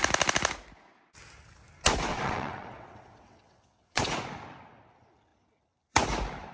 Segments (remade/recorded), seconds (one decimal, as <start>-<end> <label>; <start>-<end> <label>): 0.0-2.1 recorded; 2.1-4.0 remade; 4.0-6.5 recorded